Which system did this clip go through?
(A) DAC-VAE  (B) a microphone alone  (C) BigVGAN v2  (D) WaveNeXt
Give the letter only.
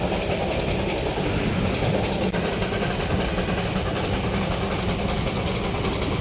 B